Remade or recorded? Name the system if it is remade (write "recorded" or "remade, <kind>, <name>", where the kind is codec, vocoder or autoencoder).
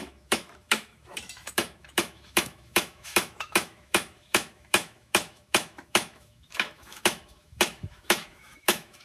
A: remade, autoencoder, DAC-VAE